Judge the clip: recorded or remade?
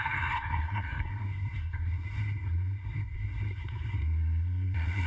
remade